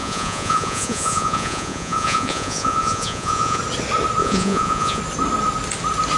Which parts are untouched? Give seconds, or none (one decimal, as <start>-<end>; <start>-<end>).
3.6-4.2; 5.0-6.2